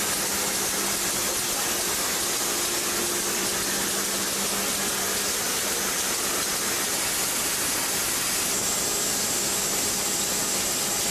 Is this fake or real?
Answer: real